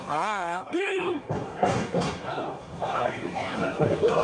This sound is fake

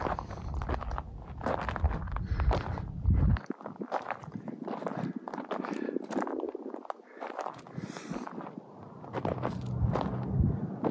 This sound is real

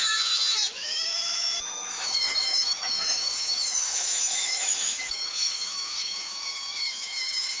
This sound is fake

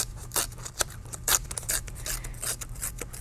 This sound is fake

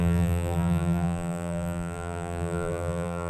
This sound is fake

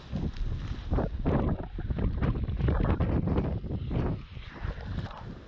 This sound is real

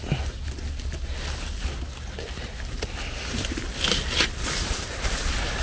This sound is real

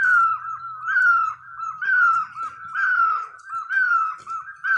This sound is real